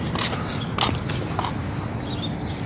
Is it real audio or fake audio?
real